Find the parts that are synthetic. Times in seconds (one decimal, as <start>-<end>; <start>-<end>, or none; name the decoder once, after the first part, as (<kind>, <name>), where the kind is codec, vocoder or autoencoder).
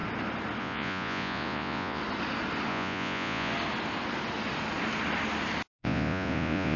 0.6-2.0 (vocoder, Vocos); 2.7-3.5; 5.8-6.8